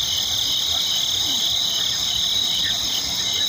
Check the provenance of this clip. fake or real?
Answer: real